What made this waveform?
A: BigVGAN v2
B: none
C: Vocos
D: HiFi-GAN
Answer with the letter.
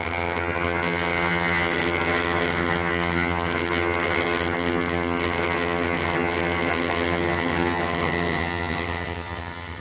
D